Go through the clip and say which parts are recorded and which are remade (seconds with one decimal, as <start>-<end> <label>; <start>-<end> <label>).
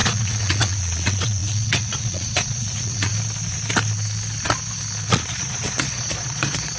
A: 0.0-3.1 remade; 3.1-5.1 recorded; 5.1-6.8 remade